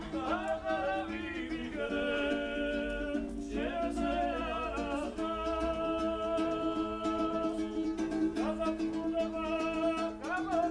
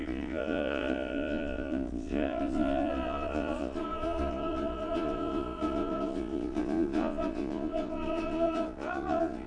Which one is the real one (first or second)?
first